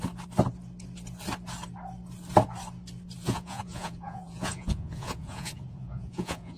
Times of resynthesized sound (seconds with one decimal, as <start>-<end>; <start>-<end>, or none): 3.2-6.6